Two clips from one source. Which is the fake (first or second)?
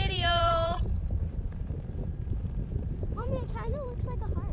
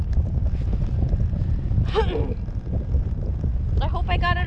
first